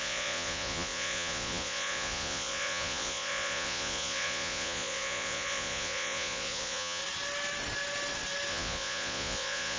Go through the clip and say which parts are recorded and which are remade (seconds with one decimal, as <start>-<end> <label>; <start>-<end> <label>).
0.0-7.0 remade; 7.0-8.5 recorded; 8.5-9.8 remade

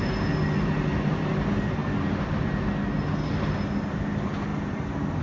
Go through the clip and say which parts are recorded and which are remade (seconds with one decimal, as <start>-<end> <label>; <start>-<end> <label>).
0.0-5.2 recorded